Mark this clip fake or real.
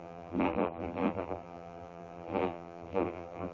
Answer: fake